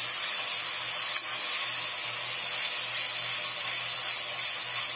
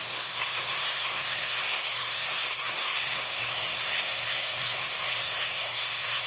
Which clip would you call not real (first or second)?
second